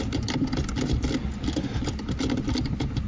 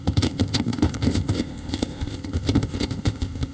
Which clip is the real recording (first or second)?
first